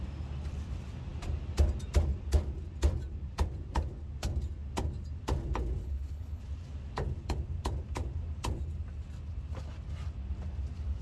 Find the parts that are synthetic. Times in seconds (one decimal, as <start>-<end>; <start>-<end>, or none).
5.8-6.4